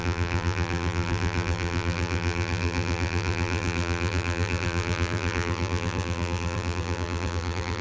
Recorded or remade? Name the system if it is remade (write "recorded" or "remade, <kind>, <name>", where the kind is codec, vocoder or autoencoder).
remade, vocoder, BigVGAN v2